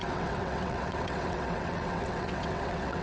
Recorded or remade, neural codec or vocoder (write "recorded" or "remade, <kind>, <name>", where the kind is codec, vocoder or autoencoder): remade, vocoder, WaveNeXt